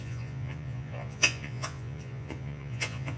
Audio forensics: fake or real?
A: fake